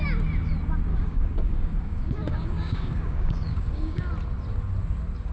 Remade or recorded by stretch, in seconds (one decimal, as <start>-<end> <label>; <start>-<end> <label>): 0.0-0.9 recorded; 0.9-4.1 remade; 4.1-5.3 recorded